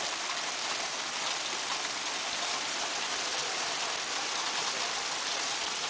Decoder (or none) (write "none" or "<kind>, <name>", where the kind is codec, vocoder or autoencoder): none